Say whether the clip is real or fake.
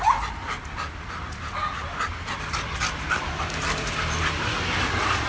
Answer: real